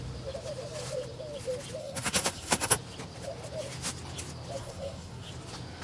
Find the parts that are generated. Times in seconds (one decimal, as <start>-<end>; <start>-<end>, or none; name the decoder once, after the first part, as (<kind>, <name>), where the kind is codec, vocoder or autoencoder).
1.8-2.7 (codec, SNAC); 4.6-5.3